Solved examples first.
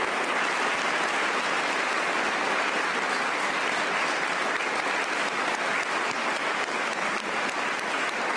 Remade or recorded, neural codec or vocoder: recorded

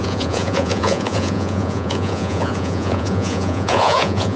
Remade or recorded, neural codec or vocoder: remade, vocoder, Vocos